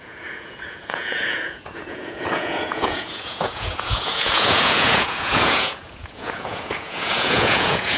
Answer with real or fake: fake